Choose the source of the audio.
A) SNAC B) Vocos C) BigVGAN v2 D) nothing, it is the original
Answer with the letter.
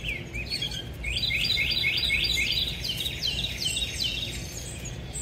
C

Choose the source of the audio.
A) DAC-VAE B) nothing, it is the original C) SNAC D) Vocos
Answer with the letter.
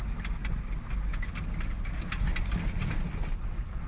B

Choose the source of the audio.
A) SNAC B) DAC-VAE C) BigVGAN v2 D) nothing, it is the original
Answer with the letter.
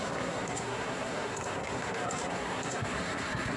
A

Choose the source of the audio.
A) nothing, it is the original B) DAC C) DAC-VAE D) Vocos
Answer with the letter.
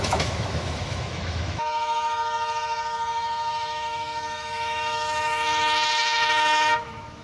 C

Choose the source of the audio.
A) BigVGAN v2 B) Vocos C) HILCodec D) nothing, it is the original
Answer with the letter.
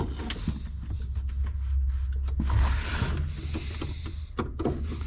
D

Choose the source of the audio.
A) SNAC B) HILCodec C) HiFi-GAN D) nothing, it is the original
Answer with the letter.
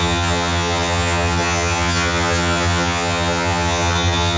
C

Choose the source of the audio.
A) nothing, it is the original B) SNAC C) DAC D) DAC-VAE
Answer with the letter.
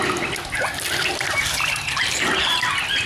A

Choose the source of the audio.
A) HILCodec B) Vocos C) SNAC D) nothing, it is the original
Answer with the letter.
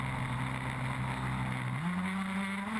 D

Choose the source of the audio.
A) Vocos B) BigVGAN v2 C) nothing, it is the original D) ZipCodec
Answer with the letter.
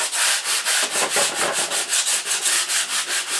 C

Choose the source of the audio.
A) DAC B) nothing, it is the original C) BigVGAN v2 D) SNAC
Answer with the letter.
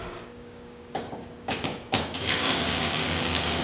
A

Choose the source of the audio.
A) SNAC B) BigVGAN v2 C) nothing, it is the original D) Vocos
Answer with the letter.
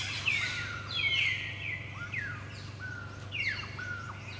C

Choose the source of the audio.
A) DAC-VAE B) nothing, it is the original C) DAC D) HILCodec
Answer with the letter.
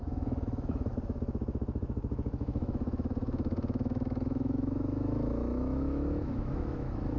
A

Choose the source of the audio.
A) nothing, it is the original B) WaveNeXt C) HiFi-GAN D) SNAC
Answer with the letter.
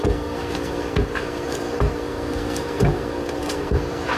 D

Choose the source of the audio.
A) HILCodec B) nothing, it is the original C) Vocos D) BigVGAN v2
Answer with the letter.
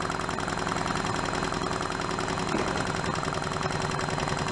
B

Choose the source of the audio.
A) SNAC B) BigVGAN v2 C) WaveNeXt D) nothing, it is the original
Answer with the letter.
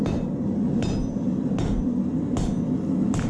D